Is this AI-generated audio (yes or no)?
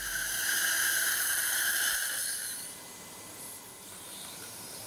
yes